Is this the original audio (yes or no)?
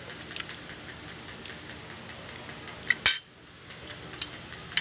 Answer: yes